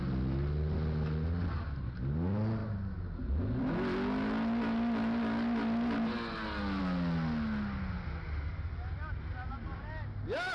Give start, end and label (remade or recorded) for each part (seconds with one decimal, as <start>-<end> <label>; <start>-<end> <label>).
0.0-10.5 recorded